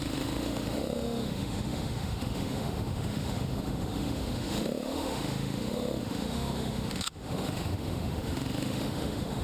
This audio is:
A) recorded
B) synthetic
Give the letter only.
B